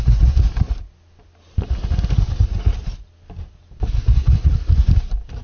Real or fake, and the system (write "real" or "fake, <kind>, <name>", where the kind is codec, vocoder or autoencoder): real